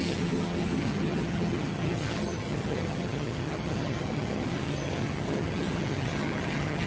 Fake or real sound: fake